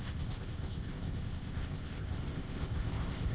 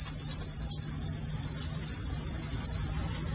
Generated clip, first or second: first